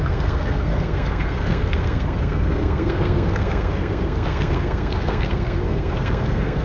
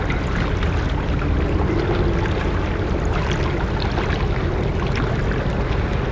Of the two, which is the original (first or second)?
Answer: second